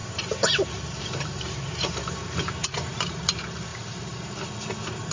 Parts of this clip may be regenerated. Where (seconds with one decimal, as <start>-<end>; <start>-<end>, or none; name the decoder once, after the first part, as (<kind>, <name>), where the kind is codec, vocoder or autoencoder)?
0.0-2.2 (vocoder, BigVGAN v2); 2.6-3.2; 3.7-4.3